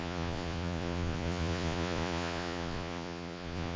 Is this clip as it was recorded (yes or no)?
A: no